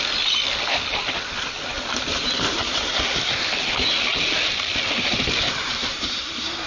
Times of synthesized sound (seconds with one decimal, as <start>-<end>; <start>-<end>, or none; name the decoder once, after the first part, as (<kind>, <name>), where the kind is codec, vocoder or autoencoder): 1.7-3.4 (vocoder, BigVGAN v2); 4.1-6.7